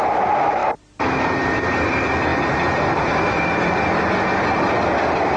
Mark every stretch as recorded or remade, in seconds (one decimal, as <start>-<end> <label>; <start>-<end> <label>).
0.0-5.4 recorded